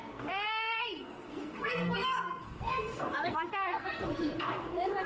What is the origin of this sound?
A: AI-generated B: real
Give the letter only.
A